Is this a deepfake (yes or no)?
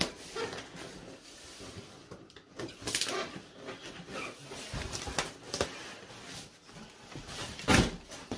no